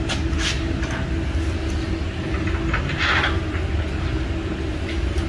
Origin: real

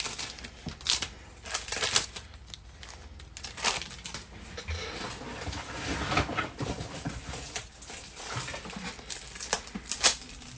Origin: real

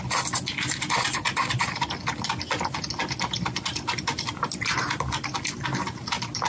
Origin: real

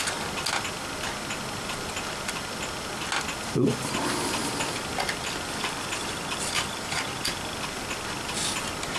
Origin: real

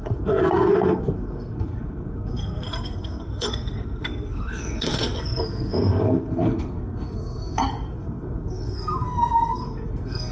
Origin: fake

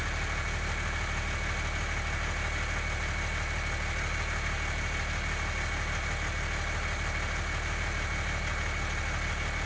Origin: real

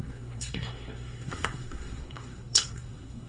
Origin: fake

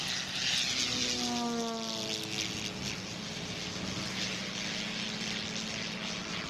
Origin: real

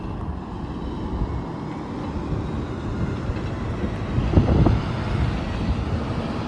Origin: real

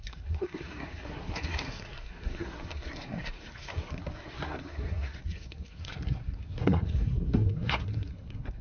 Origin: fake